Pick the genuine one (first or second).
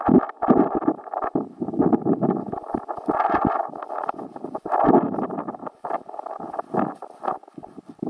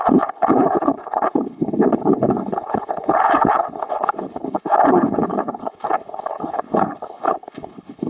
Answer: first